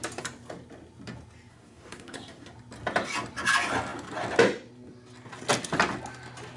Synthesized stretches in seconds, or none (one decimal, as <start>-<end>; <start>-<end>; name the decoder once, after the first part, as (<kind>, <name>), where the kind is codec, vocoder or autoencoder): 1.5-2.5 (codec, SNAC)